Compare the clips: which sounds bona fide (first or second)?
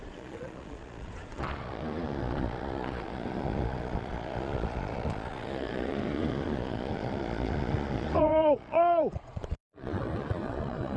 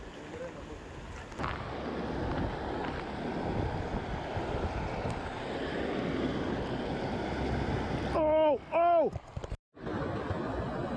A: second